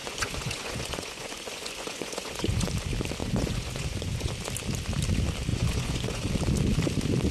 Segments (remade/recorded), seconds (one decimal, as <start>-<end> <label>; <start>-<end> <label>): 0.0-2.7 remade; 2.7-3.2 recorded; 3.2-4.3 remade; 4.3-5.5 recorded; 5.5-6.3 remade; 6.3-7.3 recorded